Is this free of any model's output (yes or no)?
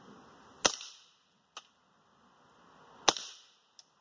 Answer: yes